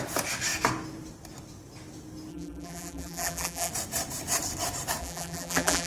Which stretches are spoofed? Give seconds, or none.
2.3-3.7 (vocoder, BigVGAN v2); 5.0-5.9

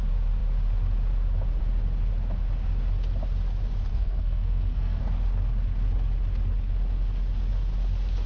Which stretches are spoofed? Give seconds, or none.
3.9-5.0 (codec, SNAC)

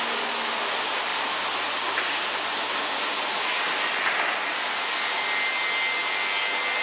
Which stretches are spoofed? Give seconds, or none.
none

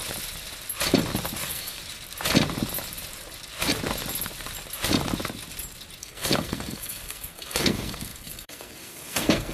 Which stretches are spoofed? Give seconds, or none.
1.4-1.8 (codec, SNAC); 6.0-9.5

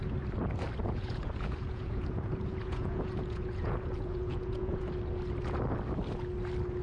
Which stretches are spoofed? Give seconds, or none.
0.8-4.9 (vocoder, Vocos)

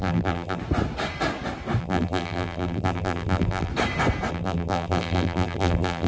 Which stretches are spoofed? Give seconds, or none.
0.0-0.6 (vocoder, BigVGAN v2); 1.8-3.7; 4.3-6.1

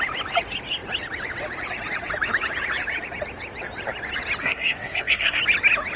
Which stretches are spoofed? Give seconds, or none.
4.4-5.4 (codec, SNAC)

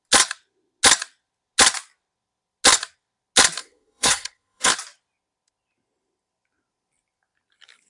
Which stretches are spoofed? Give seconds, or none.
3.6-4.7 (codec, SNAC)